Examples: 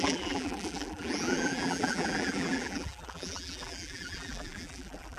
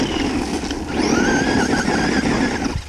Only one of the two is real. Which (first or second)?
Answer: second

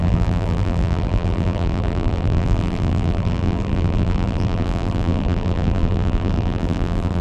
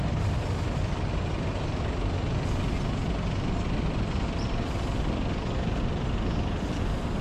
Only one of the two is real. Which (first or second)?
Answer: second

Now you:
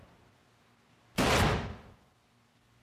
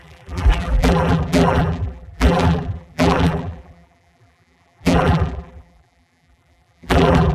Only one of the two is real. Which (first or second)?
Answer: first